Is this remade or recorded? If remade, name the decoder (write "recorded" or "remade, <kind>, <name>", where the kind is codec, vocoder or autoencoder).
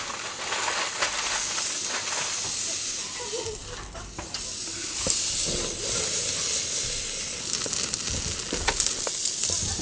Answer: recorded